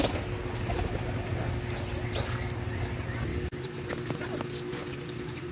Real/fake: real